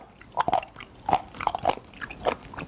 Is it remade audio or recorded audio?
recorded